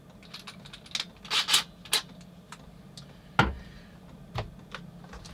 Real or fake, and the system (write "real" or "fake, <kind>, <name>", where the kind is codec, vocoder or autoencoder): real